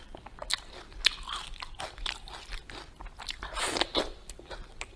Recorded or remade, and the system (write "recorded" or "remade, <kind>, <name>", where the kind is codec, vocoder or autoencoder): recorded